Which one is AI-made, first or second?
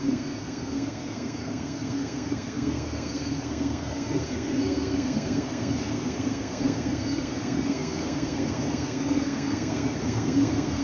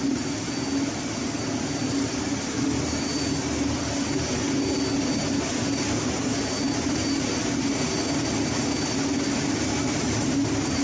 first